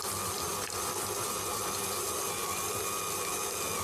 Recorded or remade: recorded